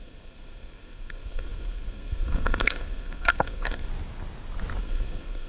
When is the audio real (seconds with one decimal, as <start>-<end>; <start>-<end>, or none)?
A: 3.9-4.8